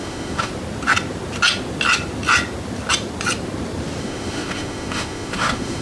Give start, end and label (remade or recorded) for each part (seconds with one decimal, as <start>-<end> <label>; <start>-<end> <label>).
0.0-0.5 remade; 0.5-4.0 recorded; 4.0-5.8 remade